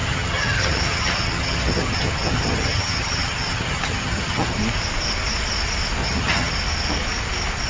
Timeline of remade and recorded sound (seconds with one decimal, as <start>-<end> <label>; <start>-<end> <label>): 0.0-4.6 remade; 4.6-6.0 recorded; 6.0-6.5 remade; 6.5-7.7 recorded